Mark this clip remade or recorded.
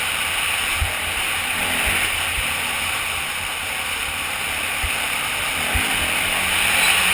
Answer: recorded